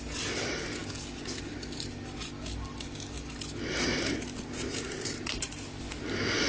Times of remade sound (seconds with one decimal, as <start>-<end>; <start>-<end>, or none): 3.9-5.8